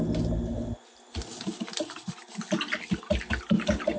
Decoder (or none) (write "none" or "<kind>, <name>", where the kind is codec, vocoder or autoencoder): none